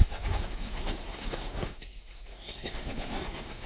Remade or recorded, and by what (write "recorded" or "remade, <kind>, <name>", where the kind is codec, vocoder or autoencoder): remade, codec, SNAC